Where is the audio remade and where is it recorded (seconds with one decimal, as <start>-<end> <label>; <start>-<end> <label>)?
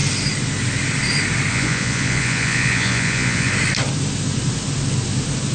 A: 0.0-1.5 recorded; 1.5-3.5 remade; 3.5-5.5 recorded